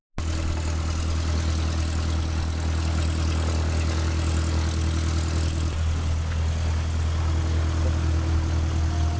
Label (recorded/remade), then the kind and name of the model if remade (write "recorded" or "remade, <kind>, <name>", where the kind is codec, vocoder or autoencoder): recorded